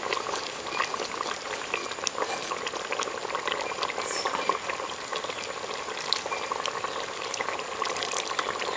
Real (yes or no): yes